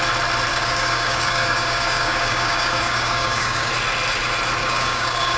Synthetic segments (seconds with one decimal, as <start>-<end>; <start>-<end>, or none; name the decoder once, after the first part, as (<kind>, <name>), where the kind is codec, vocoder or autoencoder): 0.5-3.7 (codec, DAC); 4.6-5.4